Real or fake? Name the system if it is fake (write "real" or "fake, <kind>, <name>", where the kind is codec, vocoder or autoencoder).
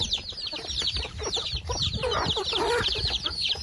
fake, vocoder, BigVGAN v2